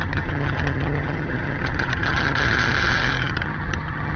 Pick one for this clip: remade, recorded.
remade